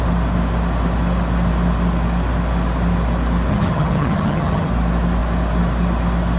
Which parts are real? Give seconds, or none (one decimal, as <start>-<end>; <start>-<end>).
0.0-3.5; 4.7-6.4

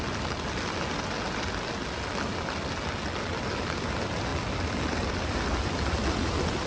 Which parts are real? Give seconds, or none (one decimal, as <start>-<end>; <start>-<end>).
0.0-6.7

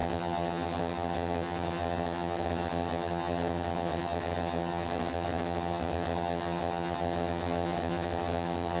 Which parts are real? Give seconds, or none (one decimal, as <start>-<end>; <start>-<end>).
none

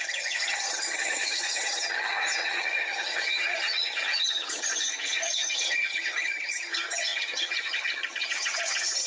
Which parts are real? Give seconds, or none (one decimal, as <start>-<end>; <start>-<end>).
none

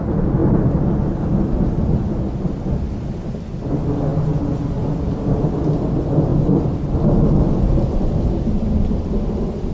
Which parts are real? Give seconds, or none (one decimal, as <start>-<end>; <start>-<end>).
0.0-9.7

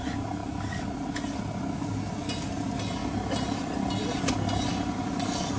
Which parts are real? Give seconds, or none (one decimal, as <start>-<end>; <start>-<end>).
0.0-5.6

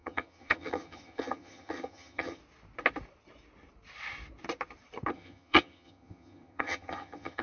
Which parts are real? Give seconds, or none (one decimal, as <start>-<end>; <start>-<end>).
2.4-5.1